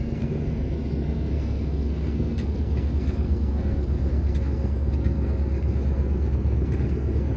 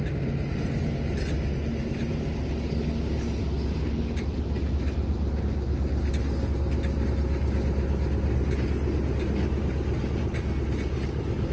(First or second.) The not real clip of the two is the first